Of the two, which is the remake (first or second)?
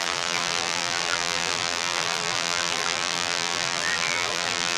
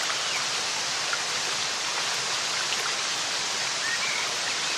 first